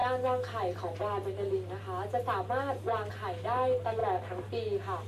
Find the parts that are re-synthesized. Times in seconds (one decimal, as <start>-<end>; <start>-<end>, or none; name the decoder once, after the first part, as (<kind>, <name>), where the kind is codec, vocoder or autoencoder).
4.0-5.1 (vocoder, BigVGAN v2)